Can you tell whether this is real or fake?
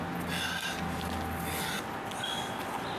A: real